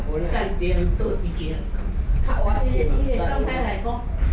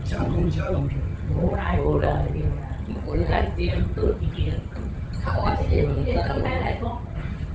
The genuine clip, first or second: first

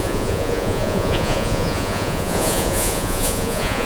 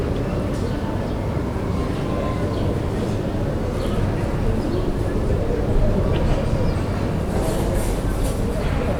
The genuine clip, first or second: second